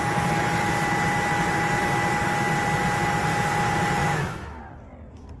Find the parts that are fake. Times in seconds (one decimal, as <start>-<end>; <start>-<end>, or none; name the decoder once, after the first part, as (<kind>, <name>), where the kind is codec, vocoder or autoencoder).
4.0-4.6 (autoencoder, DAC-VAE)